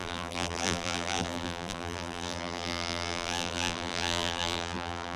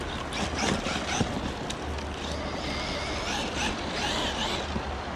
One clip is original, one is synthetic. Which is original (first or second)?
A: second